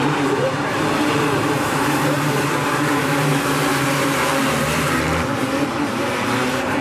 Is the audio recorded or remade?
remade